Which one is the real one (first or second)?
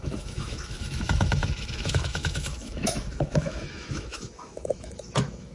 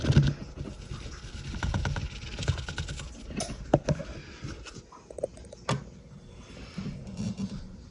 second